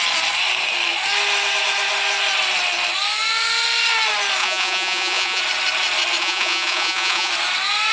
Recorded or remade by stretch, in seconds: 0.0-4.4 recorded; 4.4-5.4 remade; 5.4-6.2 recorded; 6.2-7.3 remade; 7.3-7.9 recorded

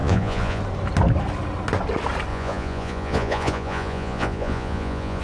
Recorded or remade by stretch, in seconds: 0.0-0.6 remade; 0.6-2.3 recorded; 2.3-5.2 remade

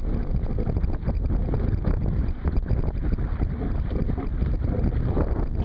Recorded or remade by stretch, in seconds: 0.0-2.2 recorded; 2.2-2.7 remade; 2.7-5.6 recorded

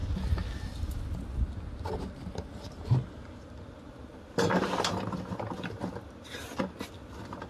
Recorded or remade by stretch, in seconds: 0.0-7.5 recorded

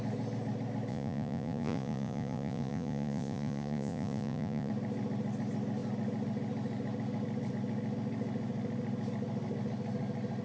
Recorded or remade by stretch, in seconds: 0.0-0.9 recorded; 0.9-4.7 remade; 4.7-10.4 recorded

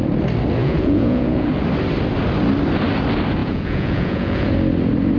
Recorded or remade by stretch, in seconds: 0.0-0.6 recorded; 0.6-1.5 remade; 1.5-3.4 recorded; 3.4-4.5 remade; 4.5-5.2 recorded

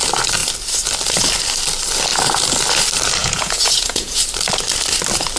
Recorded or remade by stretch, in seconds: 0.0-3.2 recorded; 3.2-4.2 remade; 4.2-5.4 recorded

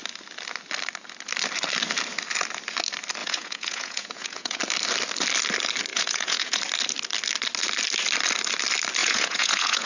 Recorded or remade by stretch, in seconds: 0.0-3.2 recorded; 3.2-4.6 remade; 4.6-5.9 recorded; 5.9-6.6 remade; 6.6-9.0 recorded; 9.0-9.9 remade